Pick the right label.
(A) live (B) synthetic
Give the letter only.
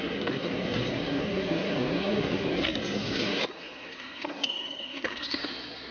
B